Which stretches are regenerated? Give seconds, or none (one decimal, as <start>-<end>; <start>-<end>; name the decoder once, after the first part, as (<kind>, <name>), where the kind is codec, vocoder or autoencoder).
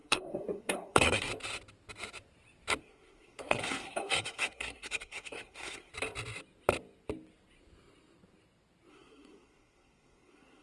0.0-1.3 (codec, SNAC); 2.8-5.9; 8.9-10.6